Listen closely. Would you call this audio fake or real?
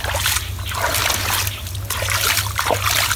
real